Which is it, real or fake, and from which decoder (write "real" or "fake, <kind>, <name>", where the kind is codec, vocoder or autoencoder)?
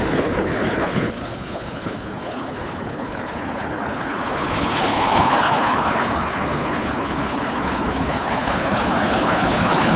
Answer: fake, codec, HILCodec